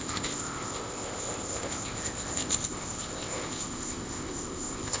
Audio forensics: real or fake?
fake